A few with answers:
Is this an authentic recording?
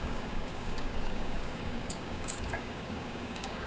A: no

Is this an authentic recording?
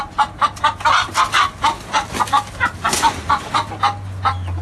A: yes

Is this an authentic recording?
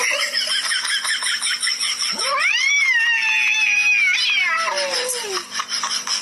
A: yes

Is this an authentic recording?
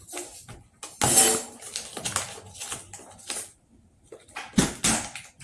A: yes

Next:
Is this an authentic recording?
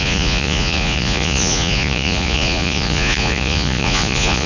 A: no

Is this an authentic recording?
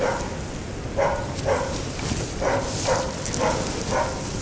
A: yes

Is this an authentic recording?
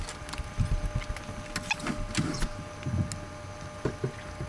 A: yes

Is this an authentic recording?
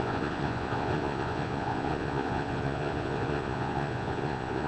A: no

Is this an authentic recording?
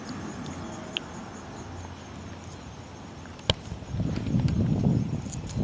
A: yes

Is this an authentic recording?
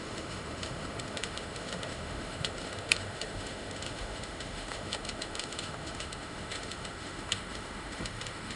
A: no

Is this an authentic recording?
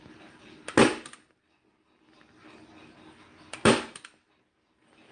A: yes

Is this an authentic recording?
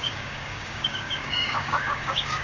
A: no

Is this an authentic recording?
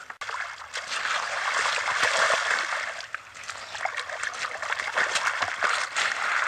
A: yes